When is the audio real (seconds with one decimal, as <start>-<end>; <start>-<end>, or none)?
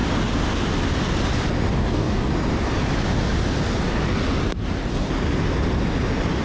0.0-1.7; 2.3-6.4